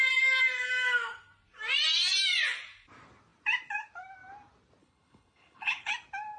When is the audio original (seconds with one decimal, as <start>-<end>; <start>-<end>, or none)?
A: 0.0-4.8; 5.9-6.4